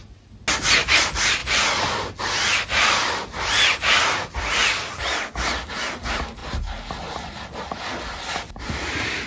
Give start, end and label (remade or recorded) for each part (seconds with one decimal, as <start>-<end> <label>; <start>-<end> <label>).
0.0-9.3 recorded